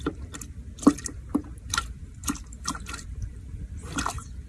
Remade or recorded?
remade